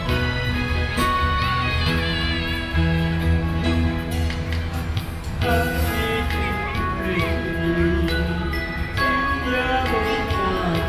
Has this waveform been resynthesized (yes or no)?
no